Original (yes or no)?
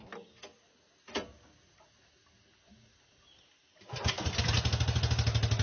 yes